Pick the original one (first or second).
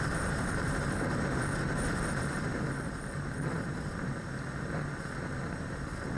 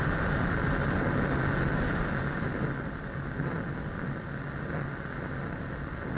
second